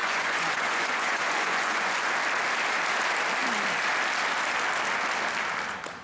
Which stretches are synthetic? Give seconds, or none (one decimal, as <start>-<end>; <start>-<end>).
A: 0.0-2.1